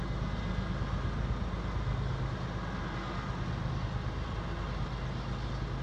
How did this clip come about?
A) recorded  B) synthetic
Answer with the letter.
A